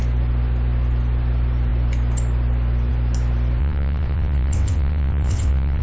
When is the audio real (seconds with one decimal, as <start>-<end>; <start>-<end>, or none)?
0.0-3.6